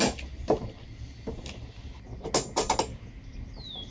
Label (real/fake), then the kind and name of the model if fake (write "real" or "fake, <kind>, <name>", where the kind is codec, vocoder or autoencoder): real